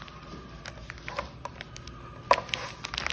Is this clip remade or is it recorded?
recorded